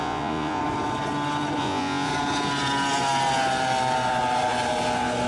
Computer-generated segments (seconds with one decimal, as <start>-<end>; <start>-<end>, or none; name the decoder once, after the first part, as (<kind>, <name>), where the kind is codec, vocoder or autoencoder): 0.0-0.6 (vocoder, Vocos); 1.6-2.1